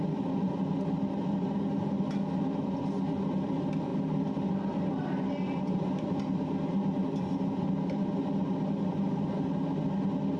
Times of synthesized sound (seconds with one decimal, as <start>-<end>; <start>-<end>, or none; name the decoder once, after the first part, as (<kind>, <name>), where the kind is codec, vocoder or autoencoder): none